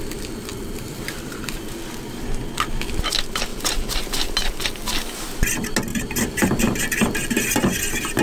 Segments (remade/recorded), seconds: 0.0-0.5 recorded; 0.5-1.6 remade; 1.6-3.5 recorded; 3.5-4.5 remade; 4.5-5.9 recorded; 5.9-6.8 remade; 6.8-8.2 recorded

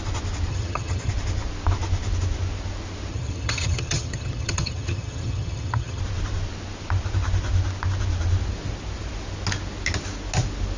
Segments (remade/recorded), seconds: 0.0-0.5 recorded; 0.5-1.1 remade; 1.1-3.1 recorded; 3.1-6.0 remade; 6.0-10.8 recorded

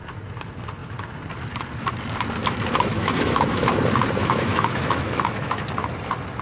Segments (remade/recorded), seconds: 0.0-2.9 recorded; 2.9-3.7 remade; 3.7-4.2 recorded; 4.2-5.6 remade; 5.6-6.4 recorded

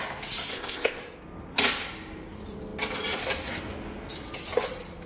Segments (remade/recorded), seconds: 0.0-0.5 recorded; 0.5-1.0 remade; 1.0-5.1 recorded